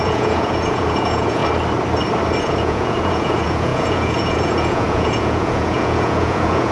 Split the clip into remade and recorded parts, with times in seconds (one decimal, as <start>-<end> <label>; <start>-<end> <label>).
0.0-1.4 remade; 1.4-2.4 recorded; 2.4-6.7 remade